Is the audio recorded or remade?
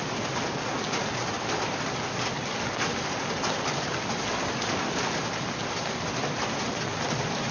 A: recorded